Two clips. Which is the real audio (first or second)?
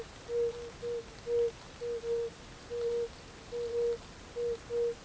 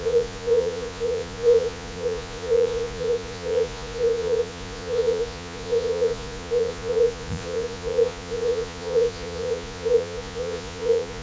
first